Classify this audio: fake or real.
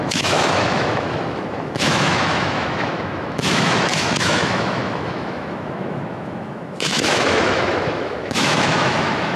fake